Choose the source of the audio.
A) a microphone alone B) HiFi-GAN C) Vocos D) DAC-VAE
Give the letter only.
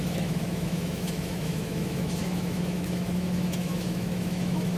D